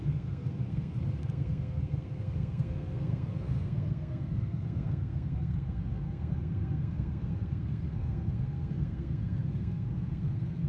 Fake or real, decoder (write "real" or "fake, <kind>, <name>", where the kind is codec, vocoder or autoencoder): fake, codec, SNAC